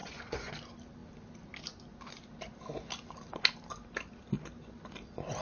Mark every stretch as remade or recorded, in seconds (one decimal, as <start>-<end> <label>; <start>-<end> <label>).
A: 0.0-0.5 remade; 0.5-5.4 recorded